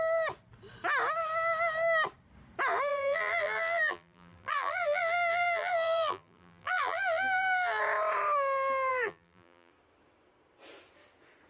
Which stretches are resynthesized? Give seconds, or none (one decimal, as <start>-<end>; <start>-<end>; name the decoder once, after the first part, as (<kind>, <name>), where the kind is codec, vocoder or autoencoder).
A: 2.9-7.8 (vocoder, BigVGAN v2); 8.9-9.7